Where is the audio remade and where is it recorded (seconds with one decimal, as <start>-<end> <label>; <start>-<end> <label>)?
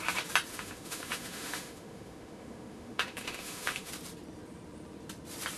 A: 0.0-0.5 recorded; 0.5-3.9 remade; 3.9-5.6 recorded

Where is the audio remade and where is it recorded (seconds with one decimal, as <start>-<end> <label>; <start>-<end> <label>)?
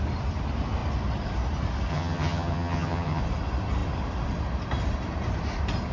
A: 0.0-1.9 recorded; 1.9-3.2 remade; 3.2-5.9 recorded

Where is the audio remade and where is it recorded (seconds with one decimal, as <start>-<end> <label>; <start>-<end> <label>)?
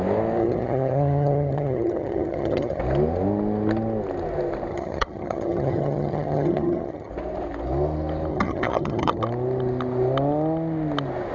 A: 0.0-0.4 recorded; 0.4-2.8 remade; 2.8-4.7 recorded; 4.7-7.1 remade; 7.1-8.3 recorded; 8.3-9.2 remade; 9.2-11.3 recorded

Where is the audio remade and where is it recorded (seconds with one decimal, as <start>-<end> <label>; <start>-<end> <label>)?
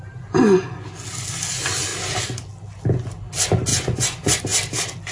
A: 0.0-3.7 recorded; 3.7-4.4 remade; 4.4-5.1 recorded